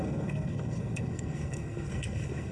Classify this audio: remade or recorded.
remade